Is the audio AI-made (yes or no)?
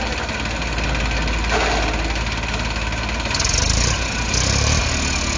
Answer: no